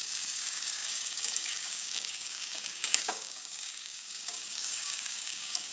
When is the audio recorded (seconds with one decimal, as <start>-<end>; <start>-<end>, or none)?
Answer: none